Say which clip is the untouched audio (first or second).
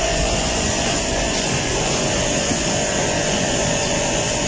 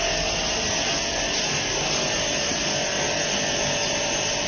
second